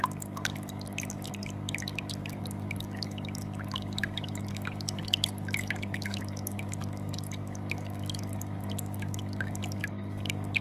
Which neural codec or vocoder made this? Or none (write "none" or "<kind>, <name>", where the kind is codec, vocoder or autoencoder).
codec, DAC